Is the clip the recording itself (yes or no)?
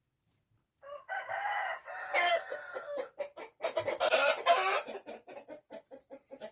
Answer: yes